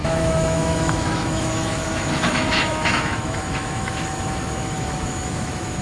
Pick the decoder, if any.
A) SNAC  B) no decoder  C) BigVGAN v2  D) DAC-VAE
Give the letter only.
D